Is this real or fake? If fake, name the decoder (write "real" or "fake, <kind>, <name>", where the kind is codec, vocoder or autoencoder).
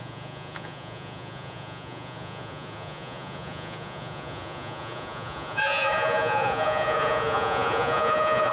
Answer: fake, vocoder, Vocos